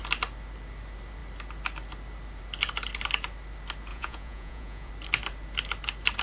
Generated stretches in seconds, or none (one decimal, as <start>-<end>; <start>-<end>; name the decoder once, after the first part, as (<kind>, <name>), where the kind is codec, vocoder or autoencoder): 3.9-4.9 (vocoder, Vocos)

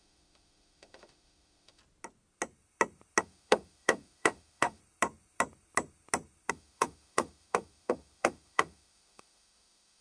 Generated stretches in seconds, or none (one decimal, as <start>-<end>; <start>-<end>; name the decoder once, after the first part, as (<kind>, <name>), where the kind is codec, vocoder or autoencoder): 0.0-1.8 (autoencoder, DAC-VAE); 3.2-4.8; 6.5-10.0